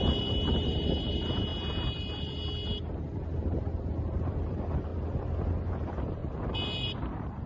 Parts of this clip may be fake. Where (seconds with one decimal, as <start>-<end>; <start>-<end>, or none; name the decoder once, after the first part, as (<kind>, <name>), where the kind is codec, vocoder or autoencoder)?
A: 0.0-1.5 (vocoder, BigVGAN v2); 4.3-4.9; 5.7-6.2; 7.0-7.5